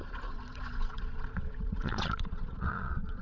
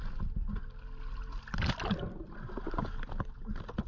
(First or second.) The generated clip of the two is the first